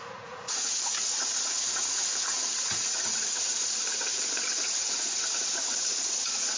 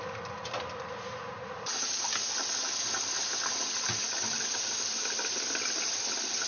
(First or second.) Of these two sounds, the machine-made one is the first